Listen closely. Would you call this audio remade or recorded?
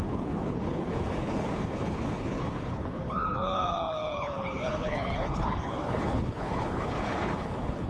remade